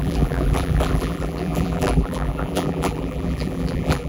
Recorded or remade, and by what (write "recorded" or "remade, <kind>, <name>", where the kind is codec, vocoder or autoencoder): remade, vocoder, BigVGAN v2